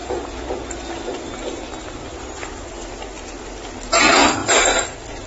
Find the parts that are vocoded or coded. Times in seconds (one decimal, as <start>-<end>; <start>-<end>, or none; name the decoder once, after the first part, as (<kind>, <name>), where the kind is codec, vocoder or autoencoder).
2.1-2.9 (vocoder, BigVGAN v2)